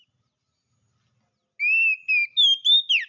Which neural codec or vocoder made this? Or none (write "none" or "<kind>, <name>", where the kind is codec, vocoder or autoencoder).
none